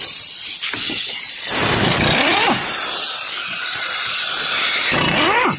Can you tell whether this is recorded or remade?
recorded